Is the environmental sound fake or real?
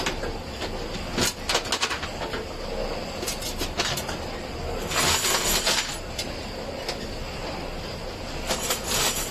real